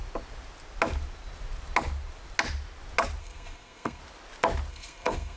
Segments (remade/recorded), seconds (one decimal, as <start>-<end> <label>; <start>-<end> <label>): 0.0-3.2 recorded; 3.2-4.0 remade; 4.0-4.7 recorded; 4.7-5.4 remade

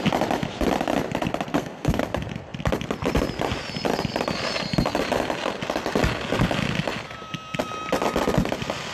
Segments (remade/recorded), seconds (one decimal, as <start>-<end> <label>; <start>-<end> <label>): 0.0-1.5 recorded; 1.5-2.0 remade; 2.0-8.9 recorded

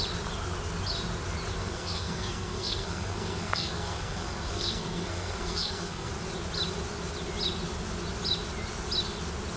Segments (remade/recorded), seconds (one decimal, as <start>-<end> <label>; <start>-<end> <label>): 0.0-1.6 recorded; 1.6-6.1 remade; 6.1-9.6 recorded

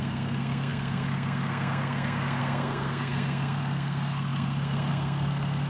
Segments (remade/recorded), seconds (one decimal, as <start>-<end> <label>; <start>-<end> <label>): 0.0-5.7 remade

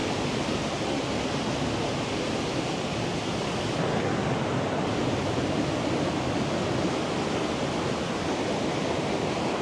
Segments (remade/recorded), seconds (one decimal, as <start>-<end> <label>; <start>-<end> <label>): 0.0-9.6 recorded

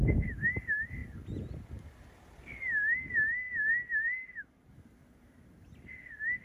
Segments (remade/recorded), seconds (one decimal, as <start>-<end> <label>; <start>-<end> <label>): 0.0-6.4 recorded

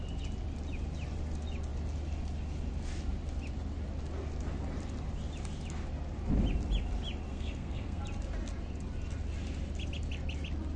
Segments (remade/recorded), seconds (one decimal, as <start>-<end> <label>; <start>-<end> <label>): 0.0-7.3 recorded; 7.3-8.0 remade; 8.0-10.8 recorded